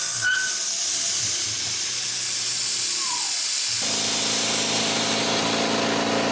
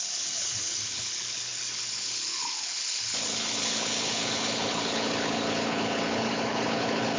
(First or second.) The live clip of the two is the first